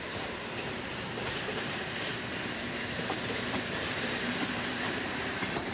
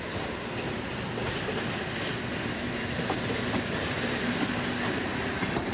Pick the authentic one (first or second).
second